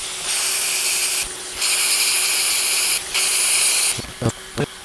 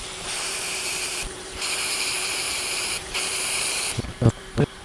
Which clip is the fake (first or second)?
second